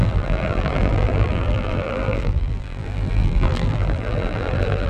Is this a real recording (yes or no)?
no